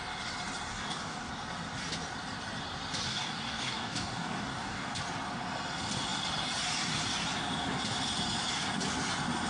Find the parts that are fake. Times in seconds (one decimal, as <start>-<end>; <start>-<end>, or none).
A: 0.7-1.3; 3.1-5.0